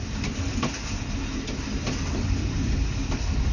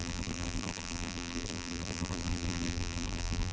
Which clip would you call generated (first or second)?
second